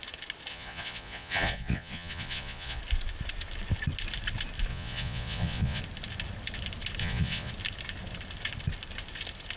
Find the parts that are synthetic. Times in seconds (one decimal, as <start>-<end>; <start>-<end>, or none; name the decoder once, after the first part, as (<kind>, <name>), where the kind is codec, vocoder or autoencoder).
0.5-2.8 (vocoder, Vocos); 4.7-5.8; 7.0-7.5